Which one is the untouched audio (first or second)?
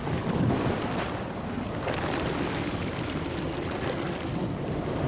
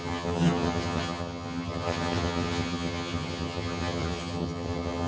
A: first